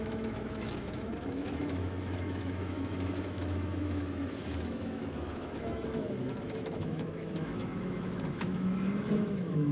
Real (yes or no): no